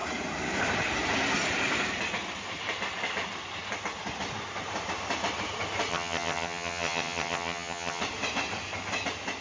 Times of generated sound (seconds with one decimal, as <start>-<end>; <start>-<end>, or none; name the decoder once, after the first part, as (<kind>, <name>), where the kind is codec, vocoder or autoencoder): 5.9-8.0 (vocoder, HiFi-GAN)